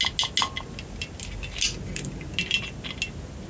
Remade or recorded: recorded